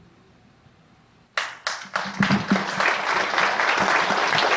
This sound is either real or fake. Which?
real